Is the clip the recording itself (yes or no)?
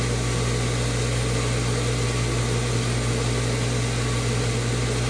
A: yes